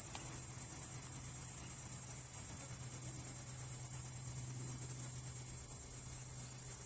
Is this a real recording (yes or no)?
yes